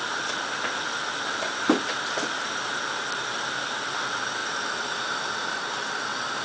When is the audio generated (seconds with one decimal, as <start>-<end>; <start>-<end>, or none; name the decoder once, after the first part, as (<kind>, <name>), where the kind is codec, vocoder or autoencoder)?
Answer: none

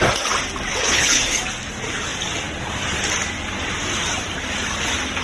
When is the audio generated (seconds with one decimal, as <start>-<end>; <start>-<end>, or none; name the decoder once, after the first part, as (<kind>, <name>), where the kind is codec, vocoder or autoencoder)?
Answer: 0.7-1.4 (codec, HILCodec)

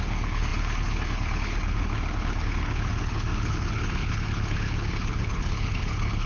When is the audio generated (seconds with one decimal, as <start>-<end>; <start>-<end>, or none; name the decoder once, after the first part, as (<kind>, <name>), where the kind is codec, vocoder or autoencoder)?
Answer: 0.0-6.3 (codec, HILCodec)

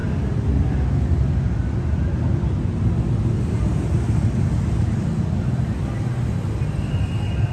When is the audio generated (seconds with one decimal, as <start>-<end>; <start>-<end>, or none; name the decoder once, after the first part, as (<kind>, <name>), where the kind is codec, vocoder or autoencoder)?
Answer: none

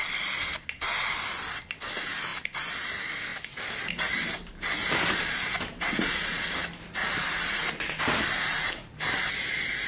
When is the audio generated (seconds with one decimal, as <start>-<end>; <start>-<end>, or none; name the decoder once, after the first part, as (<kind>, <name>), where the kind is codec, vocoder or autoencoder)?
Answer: none

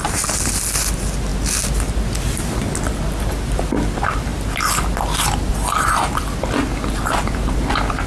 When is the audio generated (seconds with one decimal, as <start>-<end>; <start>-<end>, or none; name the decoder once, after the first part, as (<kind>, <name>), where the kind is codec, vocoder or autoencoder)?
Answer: none

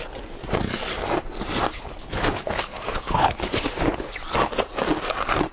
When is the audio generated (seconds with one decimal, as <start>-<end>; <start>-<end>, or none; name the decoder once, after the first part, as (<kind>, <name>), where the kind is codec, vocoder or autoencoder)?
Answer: 1.7-4.1 (codec, HILCodec)

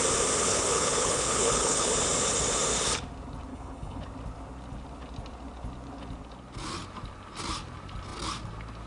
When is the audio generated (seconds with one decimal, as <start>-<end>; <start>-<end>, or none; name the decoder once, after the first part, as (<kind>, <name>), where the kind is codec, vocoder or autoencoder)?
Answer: 0.5-1.9 (codec, HILCodec); 3.5-4.0